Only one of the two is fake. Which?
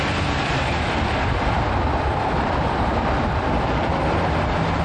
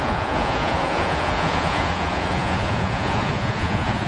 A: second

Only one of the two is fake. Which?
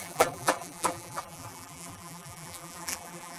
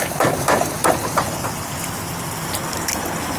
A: first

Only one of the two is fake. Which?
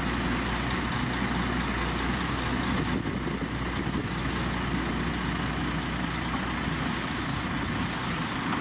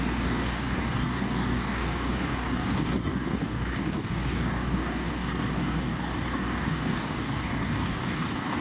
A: second